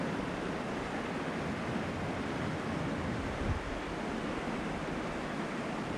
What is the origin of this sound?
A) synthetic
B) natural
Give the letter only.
B